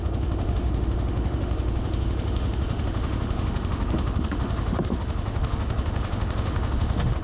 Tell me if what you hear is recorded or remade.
remade